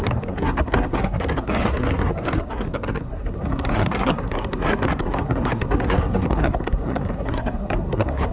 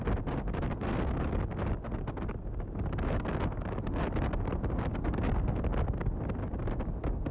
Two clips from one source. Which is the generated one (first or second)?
first